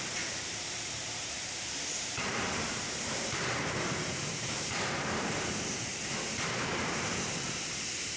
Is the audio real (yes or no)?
no